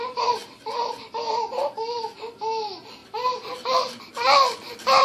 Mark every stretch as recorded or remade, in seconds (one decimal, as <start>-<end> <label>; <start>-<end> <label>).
0.0-3.0 remade; 3.0-4.0 recorded; 4.0-5.0 remade